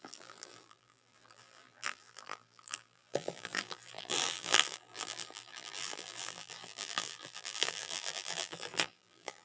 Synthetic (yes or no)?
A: yes